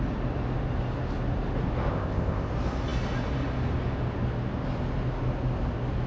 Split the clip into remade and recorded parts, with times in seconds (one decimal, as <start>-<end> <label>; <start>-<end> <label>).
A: 0.0-1.9 recorded; 1.9-2.5 remade; 2.5-6.1 recorded